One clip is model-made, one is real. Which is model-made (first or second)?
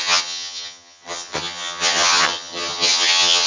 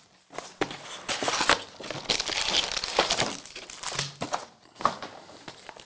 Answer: first